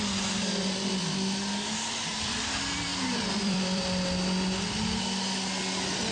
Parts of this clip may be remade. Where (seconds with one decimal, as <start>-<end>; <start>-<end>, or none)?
2.9-3.8